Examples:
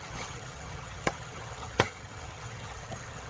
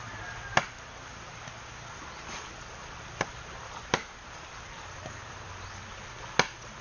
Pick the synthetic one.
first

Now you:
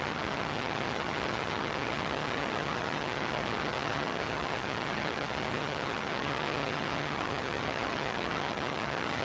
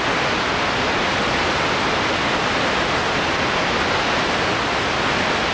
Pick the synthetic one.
first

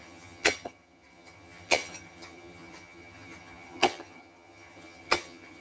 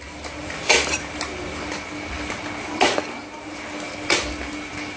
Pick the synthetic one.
first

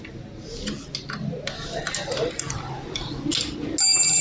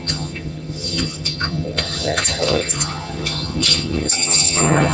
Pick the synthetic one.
second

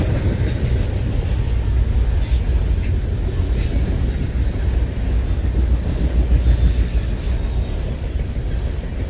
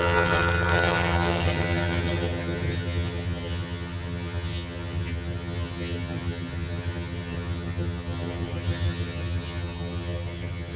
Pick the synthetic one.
second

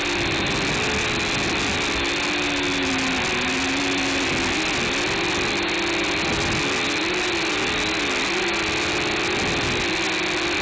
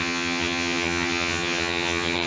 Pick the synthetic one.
second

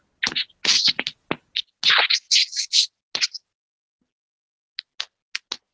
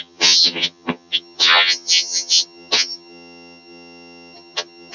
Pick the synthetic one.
second